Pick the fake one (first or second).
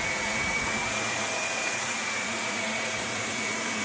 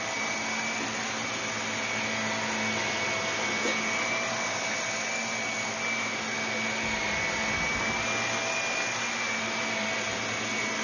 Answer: first